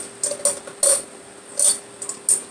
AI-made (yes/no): no